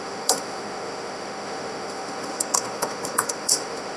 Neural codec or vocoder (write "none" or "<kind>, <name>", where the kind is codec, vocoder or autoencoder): autoencoder, DAC-VAE